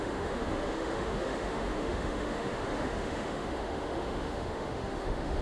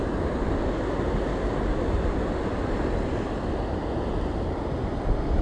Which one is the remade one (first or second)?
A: first